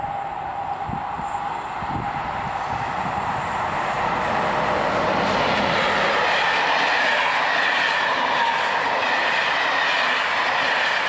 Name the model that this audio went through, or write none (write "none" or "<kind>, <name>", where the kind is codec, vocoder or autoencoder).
none